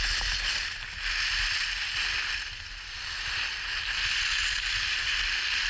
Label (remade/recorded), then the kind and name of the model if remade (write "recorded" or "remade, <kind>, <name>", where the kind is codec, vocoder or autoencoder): recorded